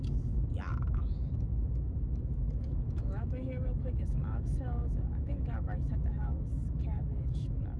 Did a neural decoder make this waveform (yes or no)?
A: yes